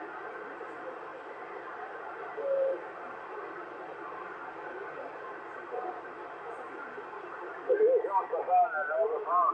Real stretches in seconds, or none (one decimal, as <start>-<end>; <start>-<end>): 0.0-9.5